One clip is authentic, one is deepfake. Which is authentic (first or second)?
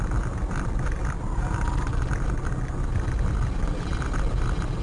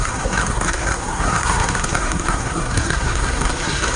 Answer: first